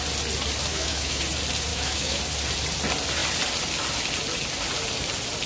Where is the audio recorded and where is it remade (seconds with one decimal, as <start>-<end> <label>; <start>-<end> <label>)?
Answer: 0.0-0.7 recorded; 0.7-1.2 remade; 1.2-1.7 recorded; 1.7-2.2 remade; 2.2-5.5 recorded